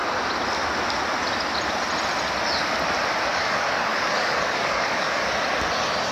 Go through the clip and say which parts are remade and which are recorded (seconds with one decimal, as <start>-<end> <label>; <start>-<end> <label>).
0.0-3.3 recorded; 3.3-5.4 remade; 5.4-6.1 recorded